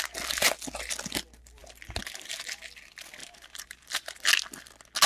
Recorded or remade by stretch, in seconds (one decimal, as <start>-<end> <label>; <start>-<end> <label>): 0.0-3.2 recorded; 3.2-3.9 remade; 3.9-5.1 recorded